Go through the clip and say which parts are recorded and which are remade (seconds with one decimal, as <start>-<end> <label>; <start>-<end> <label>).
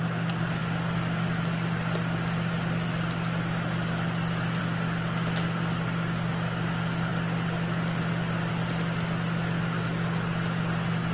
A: 0.0-11.1 recorded